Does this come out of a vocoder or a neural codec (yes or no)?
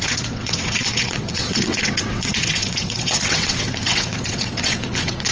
yes